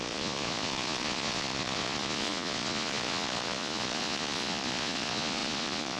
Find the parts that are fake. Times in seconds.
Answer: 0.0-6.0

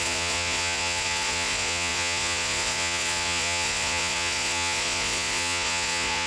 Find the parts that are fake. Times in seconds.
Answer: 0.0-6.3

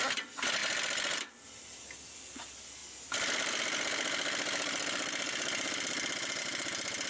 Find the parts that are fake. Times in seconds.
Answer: none

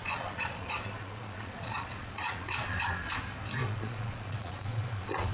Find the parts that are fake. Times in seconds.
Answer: 0.0-3.2; 3.6-5.3